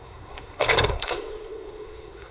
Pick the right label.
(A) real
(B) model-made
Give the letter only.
B